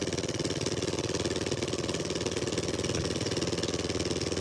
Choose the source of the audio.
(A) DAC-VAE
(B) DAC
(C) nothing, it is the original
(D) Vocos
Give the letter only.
D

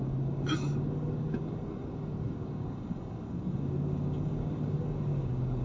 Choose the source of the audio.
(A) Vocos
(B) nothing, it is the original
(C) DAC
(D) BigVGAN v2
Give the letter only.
C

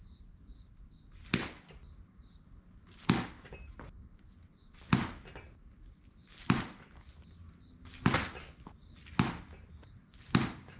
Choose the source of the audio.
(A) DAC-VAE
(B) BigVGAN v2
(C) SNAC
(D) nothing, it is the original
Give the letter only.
D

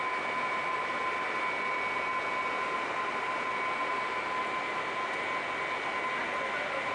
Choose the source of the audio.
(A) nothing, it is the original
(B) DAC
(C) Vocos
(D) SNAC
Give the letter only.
A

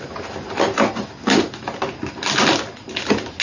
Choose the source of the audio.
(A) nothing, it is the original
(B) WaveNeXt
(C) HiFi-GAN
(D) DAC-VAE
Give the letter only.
A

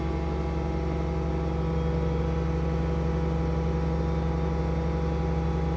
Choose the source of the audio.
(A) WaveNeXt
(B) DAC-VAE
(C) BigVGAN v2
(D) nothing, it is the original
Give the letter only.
D